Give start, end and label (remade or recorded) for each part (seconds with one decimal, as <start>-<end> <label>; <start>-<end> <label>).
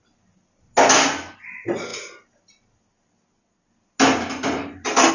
0.0-5.1 recorded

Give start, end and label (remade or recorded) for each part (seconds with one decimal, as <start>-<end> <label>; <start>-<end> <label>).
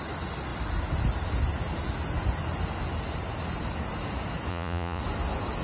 0.0-4.5 recorded; 4.5-5.0 remade; 5.0-5.6 recorded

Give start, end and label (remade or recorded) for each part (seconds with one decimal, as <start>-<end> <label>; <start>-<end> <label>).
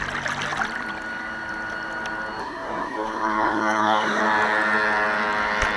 0.0-2.4 recorded; 2.4-4.2 remade; 4.2-5.8 recorded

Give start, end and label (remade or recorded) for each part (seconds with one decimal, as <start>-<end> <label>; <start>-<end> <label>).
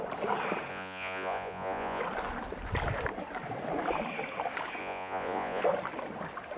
0.0-0.7 recorded; 0.7-2.0 remade; 2.0-4.8 recorded; 4.8-5.6 remade; 5.6-6.6 recorded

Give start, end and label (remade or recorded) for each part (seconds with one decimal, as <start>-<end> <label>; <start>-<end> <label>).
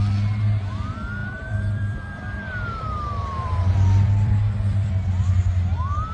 0.0-1.2 recorded; 1.2-4.9 remade; 4.9-6.1 recorded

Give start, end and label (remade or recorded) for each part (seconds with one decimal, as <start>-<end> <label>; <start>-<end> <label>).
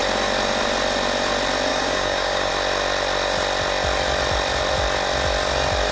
0.0-1.7 recorded; 1.7-2.5 remade; 2.5-5.9 recorded